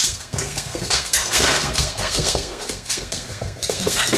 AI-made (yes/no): yes